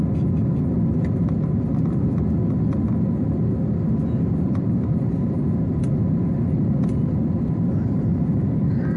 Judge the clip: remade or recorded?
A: recorded